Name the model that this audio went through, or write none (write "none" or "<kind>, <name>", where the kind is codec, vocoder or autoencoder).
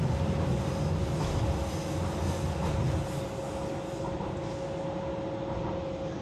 none